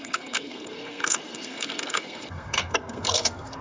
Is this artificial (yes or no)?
yes